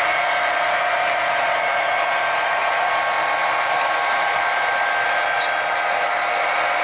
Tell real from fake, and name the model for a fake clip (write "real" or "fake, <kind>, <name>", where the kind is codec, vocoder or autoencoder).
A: real